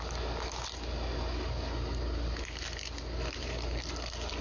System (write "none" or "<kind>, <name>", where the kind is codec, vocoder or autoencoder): none